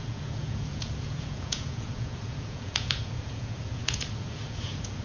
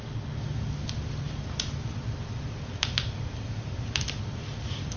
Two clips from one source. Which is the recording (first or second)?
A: second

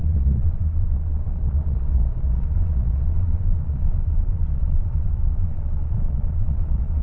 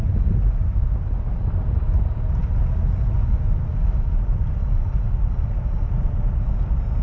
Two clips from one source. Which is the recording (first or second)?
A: second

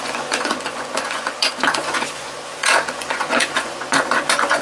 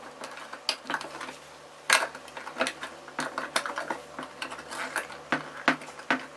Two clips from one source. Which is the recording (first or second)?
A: second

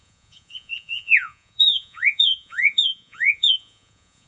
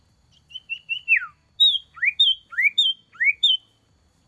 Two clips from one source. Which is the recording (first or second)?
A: second